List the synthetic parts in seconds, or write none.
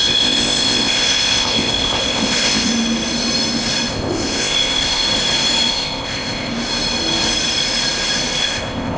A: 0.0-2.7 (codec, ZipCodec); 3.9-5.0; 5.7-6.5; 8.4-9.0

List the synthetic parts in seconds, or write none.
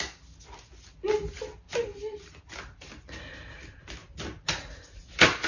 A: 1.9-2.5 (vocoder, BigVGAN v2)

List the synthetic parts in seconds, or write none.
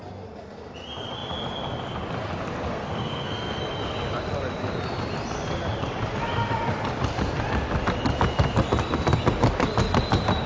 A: 2.7-3.6 (codec, SNAC)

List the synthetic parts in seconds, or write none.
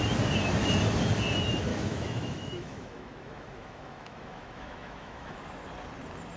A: 1.7-5.4 (autoencoder, DAC-VAE)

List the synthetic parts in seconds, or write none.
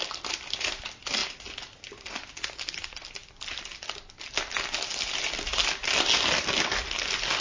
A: none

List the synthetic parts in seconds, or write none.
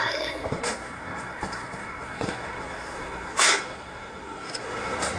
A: 0.0-5.2 (codec, SNAC)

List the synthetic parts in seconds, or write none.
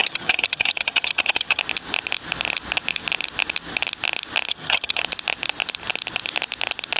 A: 0.0-1.6 (vocoder, HiFi-GAN); 4.5-5.0